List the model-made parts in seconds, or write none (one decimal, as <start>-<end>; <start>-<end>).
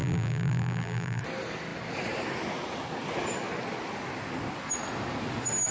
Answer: 0.0-1.2